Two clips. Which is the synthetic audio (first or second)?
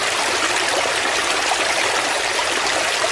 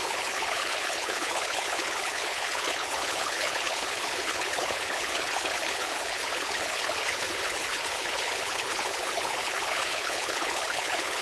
second